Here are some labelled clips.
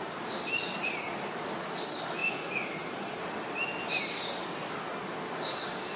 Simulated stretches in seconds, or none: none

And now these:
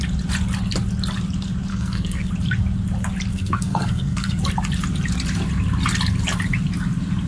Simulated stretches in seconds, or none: 1.7-2.3 (codec, SNAC); 3.3-4.4

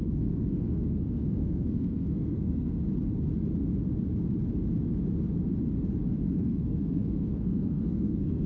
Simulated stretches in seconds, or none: 0.0-2.8 (codec, SNAC); 6.2-8.5

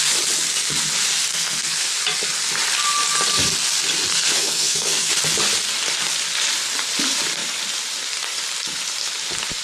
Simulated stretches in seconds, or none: 1.3-1.9 (codec, SNAC); 4.1-5.1